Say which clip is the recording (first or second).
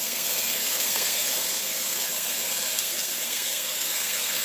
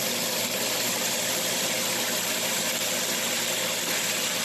second